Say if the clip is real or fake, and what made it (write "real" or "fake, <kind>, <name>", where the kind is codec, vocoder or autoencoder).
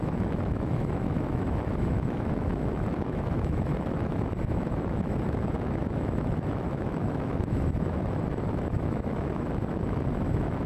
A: fake, autoencoder, DAC-VAE